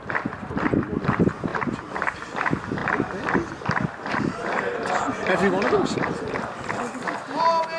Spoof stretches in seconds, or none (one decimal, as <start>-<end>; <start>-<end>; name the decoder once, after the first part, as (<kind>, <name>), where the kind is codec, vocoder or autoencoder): 1.5-2.2 (vocoder, BigVGAN v2); 2.8-6.1